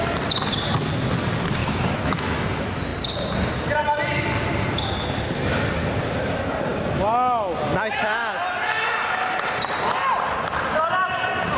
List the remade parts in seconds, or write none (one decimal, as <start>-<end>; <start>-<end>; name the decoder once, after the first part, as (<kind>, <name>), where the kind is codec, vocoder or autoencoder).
1.6-2.4 (autoencoder, DAC-VAE)